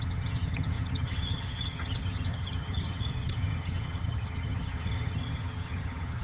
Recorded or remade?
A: remade